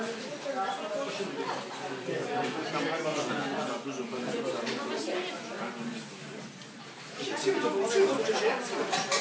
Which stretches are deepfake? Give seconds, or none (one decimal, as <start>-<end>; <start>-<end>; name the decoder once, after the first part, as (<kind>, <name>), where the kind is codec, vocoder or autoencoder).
3.1-4.4 (vocoder, Vocos)